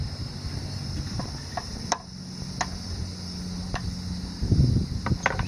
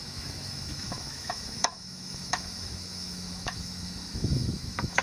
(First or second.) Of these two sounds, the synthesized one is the second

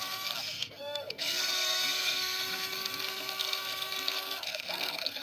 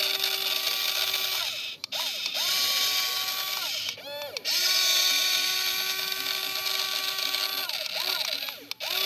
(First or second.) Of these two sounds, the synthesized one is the first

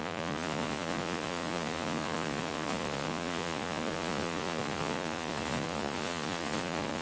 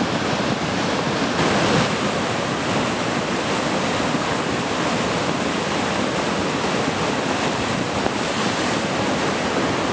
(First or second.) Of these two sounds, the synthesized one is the first